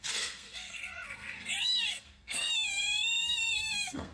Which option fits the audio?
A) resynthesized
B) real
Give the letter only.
A